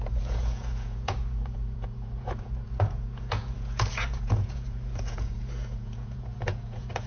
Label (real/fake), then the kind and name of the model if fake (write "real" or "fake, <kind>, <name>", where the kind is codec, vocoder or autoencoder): fake, vocoder, Vocos